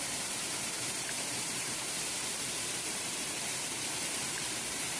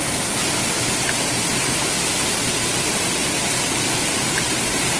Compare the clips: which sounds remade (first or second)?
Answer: first